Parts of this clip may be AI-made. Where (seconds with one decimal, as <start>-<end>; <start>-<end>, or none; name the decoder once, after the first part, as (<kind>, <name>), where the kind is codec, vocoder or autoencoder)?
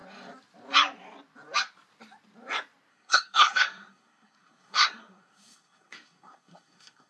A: 2.9-7.1 (codec, SNAC)